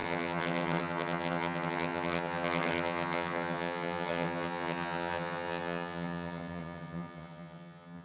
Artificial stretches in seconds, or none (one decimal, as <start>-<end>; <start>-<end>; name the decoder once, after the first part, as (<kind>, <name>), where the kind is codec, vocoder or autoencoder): 0.0-8.0 (vocoder, HiFi-GAN)

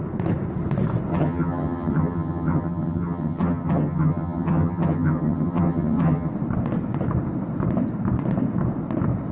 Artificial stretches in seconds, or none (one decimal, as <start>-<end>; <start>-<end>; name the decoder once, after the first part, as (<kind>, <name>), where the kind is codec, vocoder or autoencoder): 1.1-6.3 (vocoder, HiFi-GAN)

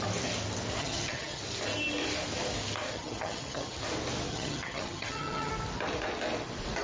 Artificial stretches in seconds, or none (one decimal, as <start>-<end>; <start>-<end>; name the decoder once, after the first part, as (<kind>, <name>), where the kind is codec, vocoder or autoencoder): 0.8-1.4 (vocoder, HiFi-GAN); 2.9-3.8; 4.3-5.5

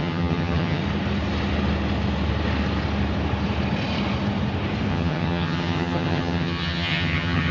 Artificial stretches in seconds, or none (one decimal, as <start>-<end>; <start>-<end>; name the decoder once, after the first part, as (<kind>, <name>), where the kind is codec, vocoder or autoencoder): 0.0-0.8 (vocoder, HiFi-GAN); 4.9-7.5